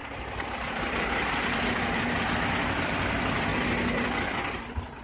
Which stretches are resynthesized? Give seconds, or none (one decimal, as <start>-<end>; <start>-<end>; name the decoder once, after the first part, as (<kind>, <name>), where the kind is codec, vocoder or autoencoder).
0.0-5.0 (vocoder, BigVGAN v2)